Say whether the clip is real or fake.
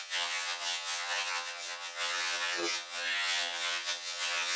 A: fake